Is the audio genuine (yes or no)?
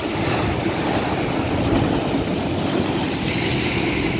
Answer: yes